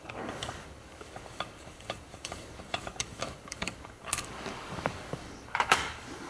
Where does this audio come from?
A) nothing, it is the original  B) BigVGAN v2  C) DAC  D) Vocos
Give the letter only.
C